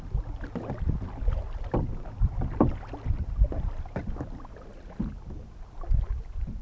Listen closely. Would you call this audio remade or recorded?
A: recorded